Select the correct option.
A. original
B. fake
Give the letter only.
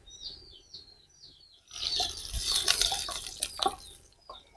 A